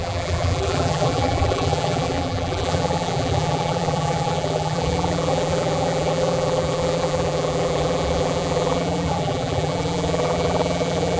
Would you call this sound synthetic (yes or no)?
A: yes